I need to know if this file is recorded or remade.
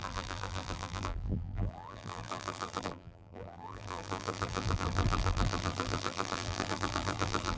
remade